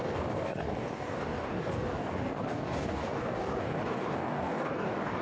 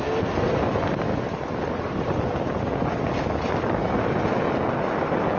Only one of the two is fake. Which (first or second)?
first